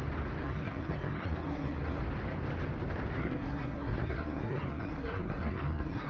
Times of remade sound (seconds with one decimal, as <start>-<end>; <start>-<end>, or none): 0.4-2.0; 3.2-6.1